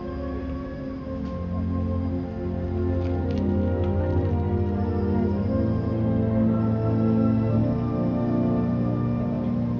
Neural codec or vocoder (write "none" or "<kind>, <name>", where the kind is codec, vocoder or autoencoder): none